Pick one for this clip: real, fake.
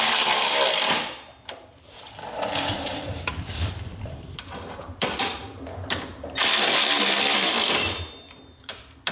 fake